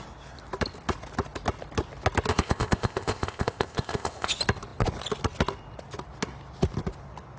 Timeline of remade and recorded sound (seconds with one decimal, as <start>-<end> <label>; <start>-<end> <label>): 0.0-2.3 recorded; 2.3-4.3 remade; 4.3-7.4 recorded